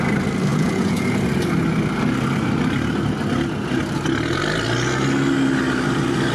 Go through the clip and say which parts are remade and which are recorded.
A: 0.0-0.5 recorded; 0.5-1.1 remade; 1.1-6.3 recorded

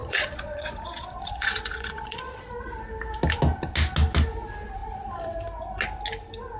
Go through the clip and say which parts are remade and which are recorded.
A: 0.0-2.5 remade; 2.5-6.6 recorded

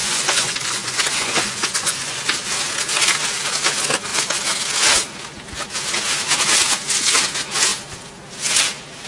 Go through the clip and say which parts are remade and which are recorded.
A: 0.0-2.2 remade; 2.2-9.1 recorded

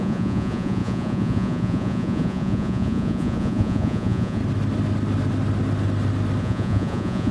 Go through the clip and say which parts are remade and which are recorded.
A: 0.0-4.4 remade; 4.4-6.4 recorded; 6.4-7.3 remade

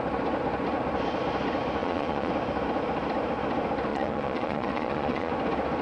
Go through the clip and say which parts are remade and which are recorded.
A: 0.0-1.8 recorded; 1.8-2.3 remade; 2.3-3.9 recorded; 3.9-5.3 remade; 5.3-5.8 recorded